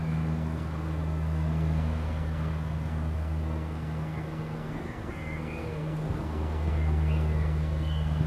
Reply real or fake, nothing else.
fake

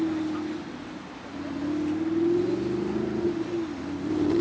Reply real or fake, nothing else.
fake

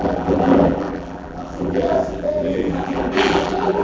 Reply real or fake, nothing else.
fake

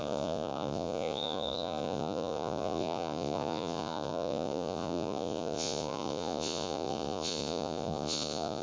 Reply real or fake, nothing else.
fake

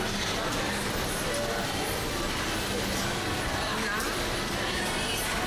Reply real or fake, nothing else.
real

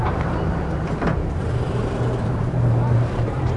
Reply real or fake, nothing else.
fake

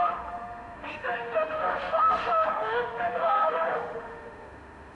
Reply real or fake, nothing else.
fake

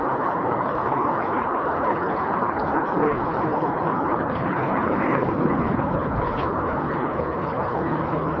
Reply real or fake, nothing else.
fake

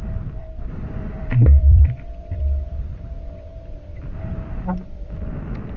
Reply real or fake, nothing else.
fake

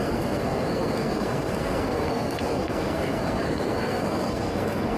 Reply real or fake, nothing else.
fake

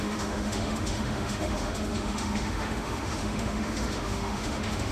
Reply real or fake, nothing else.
fake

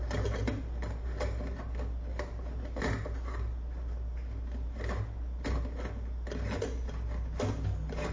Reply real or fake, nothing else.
real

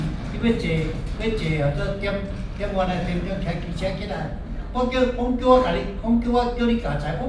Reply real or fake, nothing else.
real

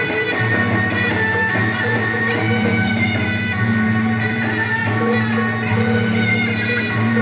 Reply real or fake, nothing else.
fake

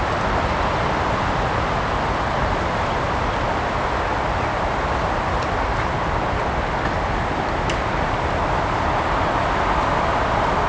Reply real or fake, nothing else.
real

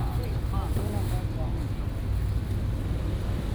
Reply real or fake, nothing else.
real